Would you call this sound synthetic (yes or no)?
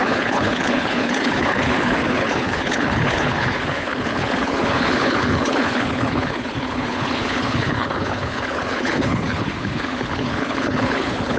yes